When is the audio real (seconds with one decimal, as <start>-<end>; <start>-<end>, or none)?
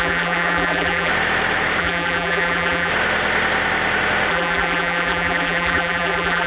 1.1-1.8; 2.9-4.3